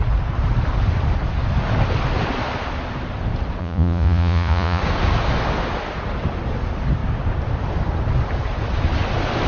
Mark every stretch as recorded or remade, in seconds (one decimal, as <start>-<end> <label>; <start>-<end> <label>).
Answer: 0.0-3.6 recorded; 3.6-4.8 remade; 4.8-9.5 recorded